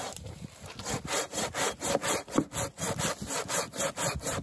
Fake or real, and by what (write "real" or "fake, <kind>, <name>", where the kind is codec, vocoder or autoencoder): real